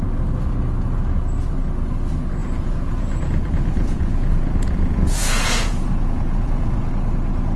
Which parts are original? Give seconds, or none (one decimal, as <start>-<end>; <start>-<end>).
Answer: 0.0-2.4; 6.9-7.6